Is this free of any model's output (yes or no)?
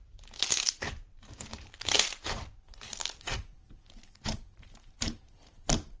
no